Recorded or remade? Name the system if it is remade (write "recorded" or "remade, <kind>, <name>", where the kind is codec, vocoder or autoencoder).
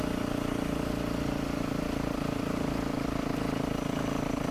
recorded